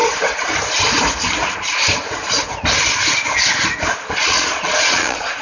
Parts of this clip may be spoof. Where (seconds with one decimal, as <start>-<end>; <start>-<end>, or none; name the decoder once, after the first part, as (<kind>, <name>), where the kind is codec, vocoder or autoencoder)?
4.2-5.4 (vocoder, Vocos)